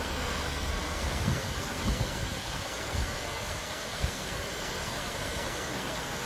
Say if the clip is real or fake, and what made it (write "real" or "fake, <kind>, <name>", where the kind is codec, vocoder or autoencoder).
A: fake, codec, SNAC